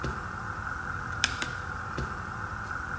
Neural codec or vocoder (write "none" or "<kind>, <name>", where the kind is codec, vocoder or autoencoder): none